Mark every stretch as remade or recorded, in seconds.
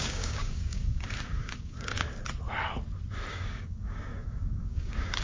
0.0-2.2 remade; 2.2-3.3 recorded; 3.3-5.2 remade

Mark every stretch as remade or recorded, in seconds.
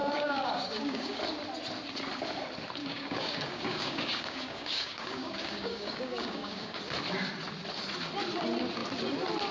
0.0-1.2 remade; 1.2-2.8 recorded; 2.8-6.8 remade; 6.8-9.5 recorded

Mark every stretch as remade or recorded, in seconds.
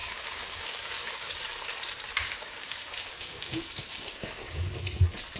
0.0-1.3 remade; 1.3-2.1 recorded; 2.1-4.7 remade; 4.7-5.4 recorded